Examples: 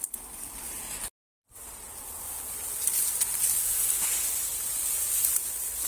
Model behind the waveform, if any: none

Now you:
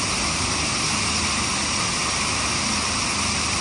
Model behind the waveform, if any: none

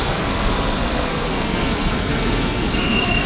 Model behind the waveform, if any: codec, SNAC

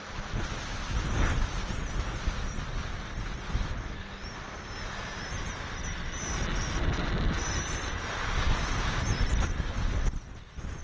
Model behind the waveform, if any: none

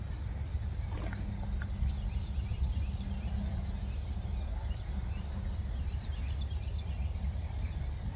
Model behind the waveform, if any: none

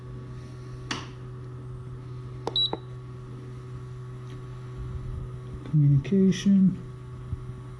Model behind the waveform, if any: none